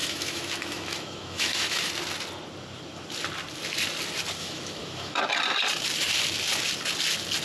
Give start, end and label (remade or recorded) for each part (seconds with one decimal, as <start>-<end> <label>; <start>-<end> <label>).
0.0-1.9 remade; 1.9-4.4 recorded; 4.4-5.2 remade; 5.2-7.4 recorded